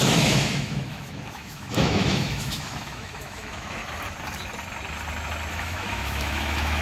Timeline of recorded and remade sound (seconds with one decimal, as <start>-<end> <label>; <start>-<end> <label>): 0.0-3.8 remade; 3.8-5.5 recorded; 5.5-6.8 remade

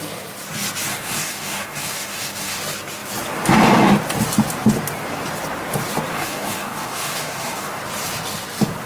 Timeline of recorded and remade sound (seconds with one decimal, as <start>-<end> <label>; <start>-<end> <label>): 0.0-0.9 recorded; 0.9-2.6 remade; 2.6-6.1 recorded; 6.1-7.8 remade; 7.8-8.9 recorded

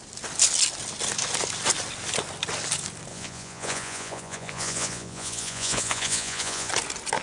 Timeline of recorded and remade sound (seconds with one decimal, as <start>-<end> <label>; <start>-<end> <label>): 0.0-3.1 recorded; 3.1-6.7 remade; 6.7-7.2 recorded

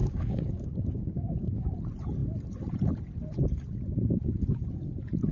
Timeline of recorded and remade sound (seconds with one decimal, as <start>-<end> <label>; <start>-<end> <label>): 0.0-1.7 remade; 1.7-5.3 recorded